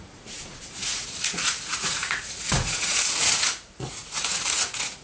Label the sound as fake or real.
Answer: fake